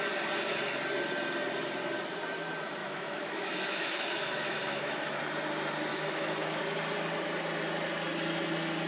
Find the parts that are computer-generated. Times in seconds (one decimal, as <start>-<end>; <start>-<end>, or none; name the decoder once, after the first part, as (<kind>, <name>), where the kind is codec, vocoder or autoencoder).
2.8-5.2 (autoencoder, DAC-VAE); 5.9-6.6